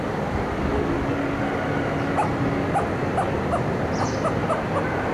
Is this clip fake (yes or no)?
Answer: no